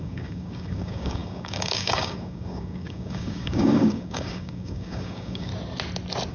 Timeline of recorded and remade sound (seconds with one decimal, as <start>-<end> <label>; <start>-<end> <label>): 0.0-5.5 remade; 5.5-6.3 recorded